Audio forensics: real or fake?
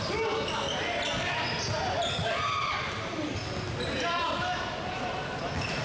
real